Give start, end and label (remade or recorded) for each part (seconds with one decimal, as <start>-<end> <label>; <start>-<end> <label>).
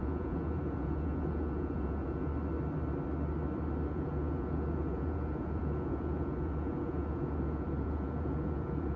0.0-2.3 remade; 2.3-3.9 recorded; 3.9-9.0 remade